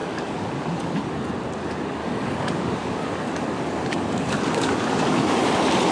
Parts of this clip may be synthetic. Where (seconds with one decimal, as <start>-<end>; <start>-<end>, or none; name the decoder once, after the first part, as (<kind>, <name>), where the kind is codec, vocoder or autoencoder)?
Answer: 0.0-1.3 (codec, DAC); 2.0-5.5